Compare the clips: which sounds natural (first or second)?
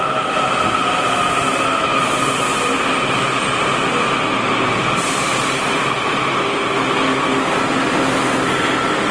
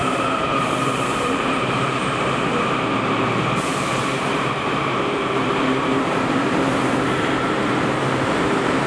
first